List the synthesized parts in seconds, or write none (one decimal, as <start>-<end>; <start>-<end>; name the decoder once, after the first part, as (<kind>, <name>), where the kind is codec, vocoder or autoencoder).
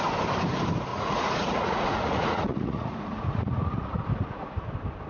0.9-4.0 (vocoder, Vocos)